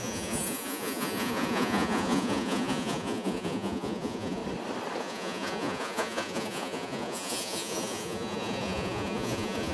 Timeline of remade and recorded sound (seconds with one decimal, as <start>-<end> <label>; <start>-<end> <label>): 0.0-4.4 remade; 4.4-5.0 recorded; 5.0-9.7 remade